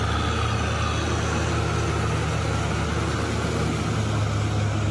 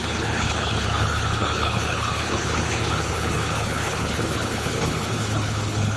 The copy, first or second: second